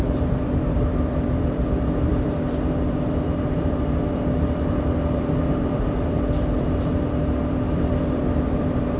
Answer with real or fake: fake